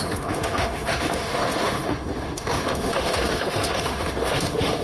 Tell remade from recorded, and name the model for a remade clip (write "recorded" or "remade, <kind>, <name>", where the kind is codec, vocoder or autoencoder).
remade, autoencoder, DAC-VAE